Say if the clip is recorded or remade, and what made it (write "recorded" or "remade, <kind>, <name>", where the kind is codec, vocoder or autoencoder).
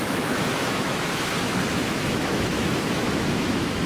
remade, autoencoder, DAC-VAE